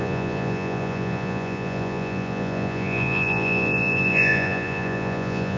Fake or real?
fake